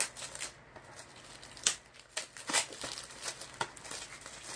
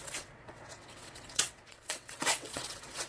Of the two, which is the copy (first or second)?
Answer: second